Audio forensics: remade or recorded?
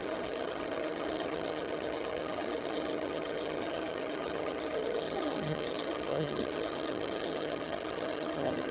remade